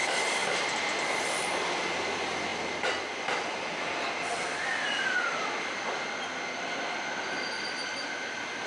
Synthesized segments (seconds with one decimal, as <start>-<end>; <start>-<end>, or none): none